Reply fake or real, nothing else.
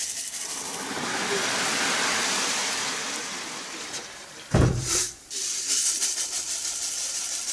fake